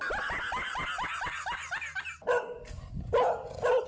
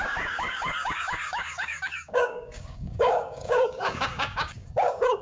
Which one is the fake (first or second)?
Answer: second